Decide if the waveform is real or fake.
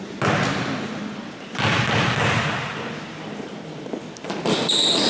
real